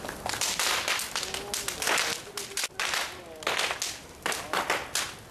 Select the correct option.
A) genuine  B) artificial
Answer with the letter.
A